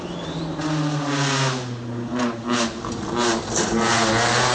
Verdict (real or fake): real